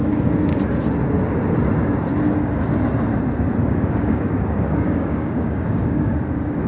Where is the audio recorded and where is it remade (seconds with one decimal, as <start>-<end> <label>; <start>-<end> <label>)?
0.0-0.5 remade; 0.5-3.6 recorded; 3.6-6.7 remade